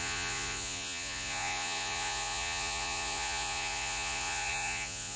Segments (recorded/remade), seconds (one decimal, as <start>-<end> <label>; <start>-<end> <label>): 0.0-5.2 remade